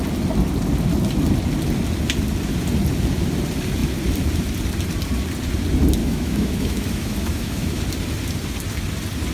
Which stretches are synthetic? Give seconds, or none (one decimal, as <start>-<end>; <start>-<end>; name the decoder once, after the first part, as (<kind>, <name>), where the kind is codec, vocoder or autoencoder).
6.0-7.8 (autoencoder, DAC-VAE)